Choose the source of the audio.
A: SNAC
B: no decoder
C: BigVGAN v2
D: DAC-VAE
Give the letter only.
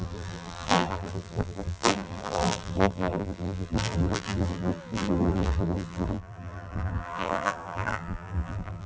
C